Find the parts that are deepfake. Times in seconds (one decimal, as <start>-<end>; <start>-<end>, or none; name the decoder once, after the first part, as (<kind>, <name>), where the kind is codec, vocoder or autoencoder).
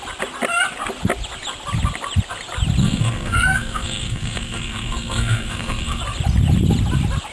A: 2.8-6.0 (codec, SNAC)